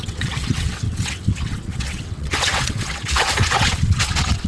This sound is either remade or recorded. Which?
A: remade